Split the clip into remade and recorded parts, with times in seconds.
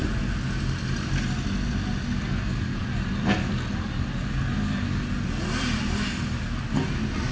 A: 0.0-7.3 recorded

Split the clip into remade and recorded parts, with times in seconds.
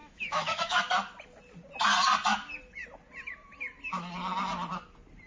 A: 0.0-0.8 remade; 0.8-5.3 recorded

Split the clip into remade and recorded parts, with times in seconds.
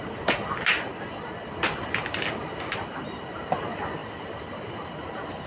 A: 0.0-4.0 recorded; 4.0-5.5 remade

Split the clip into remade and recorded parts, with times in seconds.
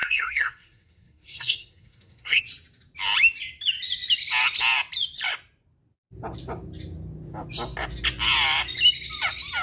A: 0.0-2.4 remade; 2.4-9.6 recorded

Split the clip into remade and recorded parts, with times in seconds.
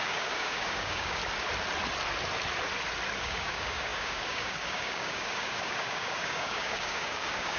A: 0.0-1.2 remade; 1.2-3.2 recorded; 3.2-7.6 remade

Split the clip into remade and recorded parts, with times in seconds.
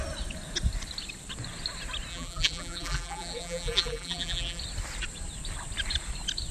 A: 0.0-2.1 recorded; 2.1-4.6 remade; 4.6-6.5 recorded